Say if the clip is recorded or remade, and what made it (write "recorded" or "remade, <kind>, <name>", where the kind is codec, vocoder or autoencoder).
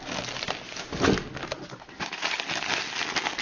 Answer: recorded